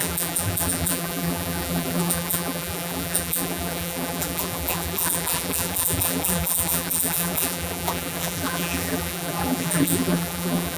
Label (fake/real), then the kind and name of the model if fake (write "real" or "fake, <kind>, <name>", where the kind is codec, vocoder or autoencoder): fake, vocoder, BigVGAN v2